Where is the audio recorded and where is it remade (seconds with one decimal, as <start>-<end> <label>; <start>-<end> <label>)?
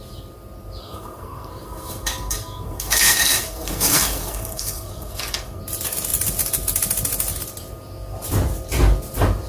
0.0-0.8 recorded; 0.8-5.6 remade; 5.6-9.5 recorded